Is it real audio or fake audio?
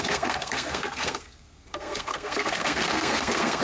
fake